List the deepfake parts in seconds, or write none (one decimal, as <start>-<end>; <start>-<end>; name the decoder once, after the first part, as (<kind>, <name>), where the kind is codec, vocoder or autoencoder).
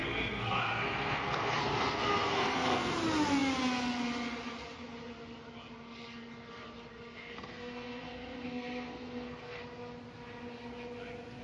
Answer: 0.0-2.9 (codec, SNAC); 6.9-9.6